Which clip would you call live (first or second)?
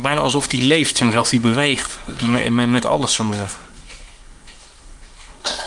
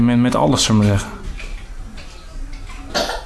second